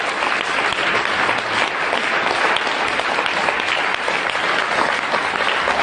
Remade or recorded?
recorded